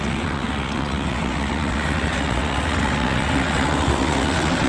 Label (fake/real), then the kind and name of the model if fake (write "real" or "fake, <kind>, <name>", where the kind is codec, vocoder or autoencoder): fake, vocoder, WaveNeXt